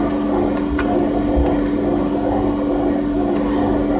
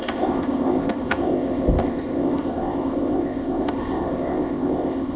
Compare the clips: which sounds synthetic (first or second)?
second